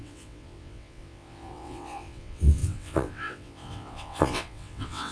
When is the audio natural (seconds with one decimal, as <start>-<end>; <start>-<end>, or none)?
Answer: none